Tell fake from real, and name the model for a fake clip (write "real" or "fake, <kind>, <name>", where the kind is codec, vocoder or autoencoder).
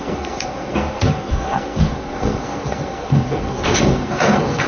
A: fake, codec, SNAC